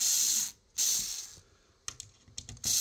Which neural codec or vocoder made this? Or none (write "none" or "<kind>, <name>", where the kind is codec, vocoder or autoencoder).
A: none